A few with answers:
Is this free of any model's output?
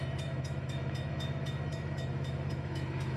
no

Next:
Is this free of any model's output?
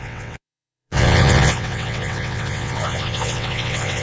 no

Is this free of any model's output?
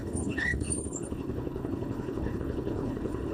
no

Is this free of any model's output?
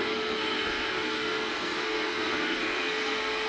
no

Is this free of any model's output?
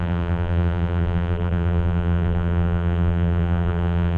no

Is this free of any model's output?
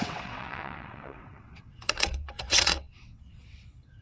no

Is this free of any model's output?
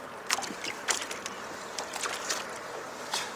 yes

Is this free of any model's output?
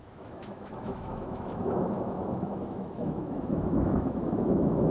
no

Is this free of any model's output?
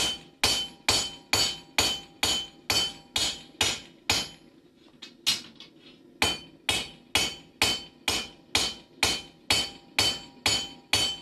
yes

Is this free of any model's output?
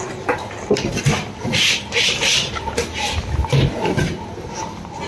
yes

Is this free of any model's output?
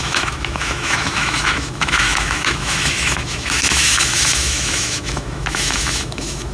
no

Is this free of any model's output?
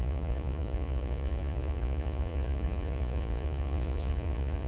no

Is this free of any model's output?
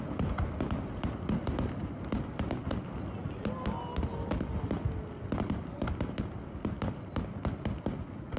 yes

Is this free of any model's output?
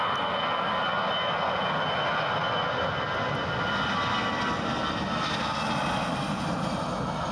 yes